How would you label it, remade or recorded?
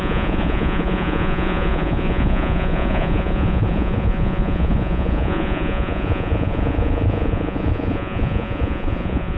remade